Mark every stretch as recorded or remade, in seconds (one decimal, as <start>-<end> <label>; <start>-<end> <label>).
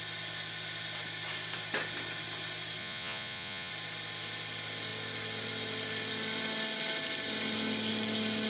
0.0-2.8 recorded; 2.8-3.7 remade; 3.7-8.5 recorded